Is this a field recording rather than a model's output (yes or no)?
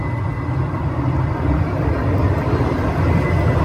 yes